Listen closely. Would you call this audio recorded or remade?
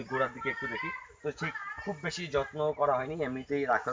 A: recorded